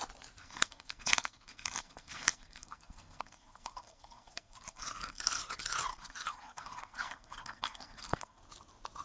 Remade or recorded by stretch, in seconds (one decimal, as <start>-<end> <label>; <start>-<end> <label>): 0.0-0.4 recorded; 0.4-5.4 remade; 5.4-5.9 recorded; 5.9-8.4 remade; 8.4-9.0 recorded